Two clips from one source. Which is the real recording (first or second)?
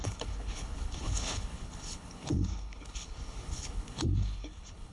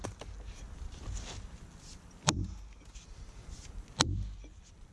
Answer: second